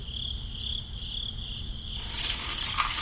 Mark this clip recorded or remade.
recorded